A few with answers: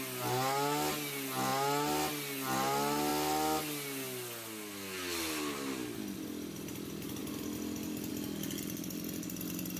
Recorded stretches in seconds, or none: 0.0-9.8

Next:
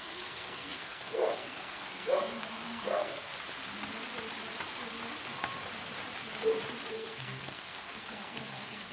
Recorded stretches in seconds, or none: 3.3-6.9

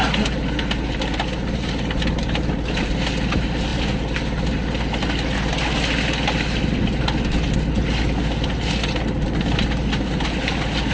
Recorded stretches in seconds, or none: 0.0-10.9

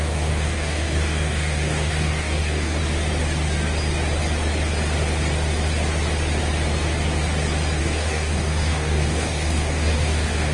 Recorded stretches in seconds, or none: 2.8-7.8

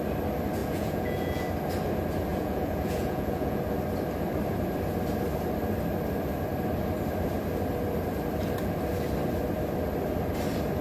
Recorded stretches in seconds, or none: 0.0-0.6; 1.4-2.3; 3.6-10.8

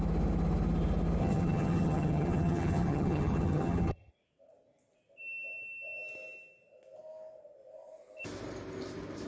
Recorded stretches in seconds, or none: 0.0-1.2; 4.1-9.3